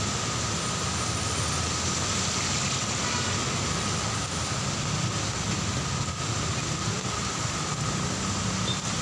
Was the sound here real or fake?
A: real